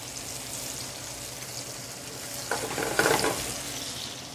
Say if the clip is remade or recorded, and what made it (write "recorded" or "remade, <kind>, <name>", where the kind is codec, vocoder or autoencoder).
recorded